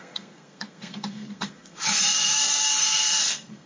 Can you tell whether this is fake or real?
fake